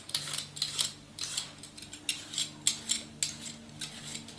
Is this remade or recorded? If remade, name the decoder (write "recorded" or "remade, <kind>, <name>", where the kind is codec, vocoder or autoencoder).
recorded